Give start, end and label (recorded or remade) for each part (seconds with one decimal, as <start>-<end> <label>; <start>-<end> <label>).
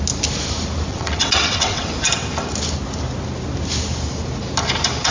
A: 0.0-0.9 recorded; 0.9-1.9 remade; 1.9-5.1 recorded